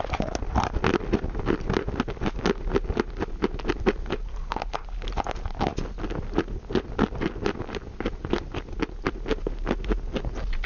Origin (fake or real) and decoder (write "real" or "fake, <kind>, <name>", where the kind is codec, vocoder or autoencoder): real